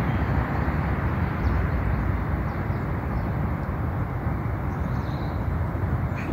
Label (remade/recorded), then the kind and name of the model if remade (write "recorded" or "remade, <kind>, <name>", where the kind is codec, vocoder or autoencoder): recorded